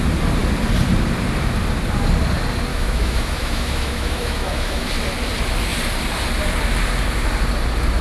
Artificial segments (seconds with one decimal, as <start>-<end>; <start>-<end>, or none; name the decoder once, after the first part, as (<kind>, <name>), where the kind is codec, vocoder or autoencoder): 2.7-4.9 (autoencoder, DAC-VAE)